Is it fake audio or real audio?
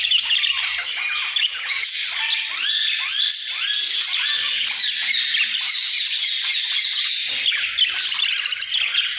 real